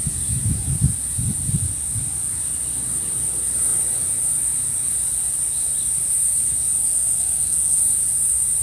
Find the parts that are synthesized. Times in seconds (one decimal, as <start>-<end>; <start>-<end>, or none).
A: 6.8-7.8